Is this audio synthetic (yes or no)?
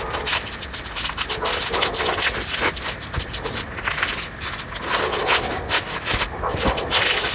no